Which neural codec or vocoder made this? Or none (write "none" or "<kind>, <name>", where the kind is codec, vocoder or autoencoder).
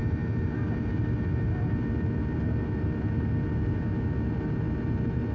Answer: vocoder, BigVGAN v2